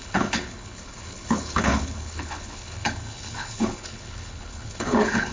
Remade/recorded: remade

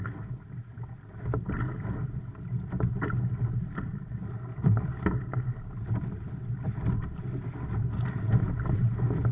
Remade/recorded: recorded